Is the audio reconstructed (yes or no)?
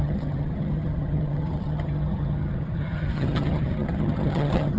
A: yes